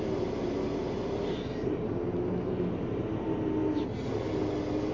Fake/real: real